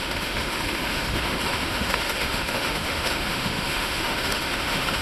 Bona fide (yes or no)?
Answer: no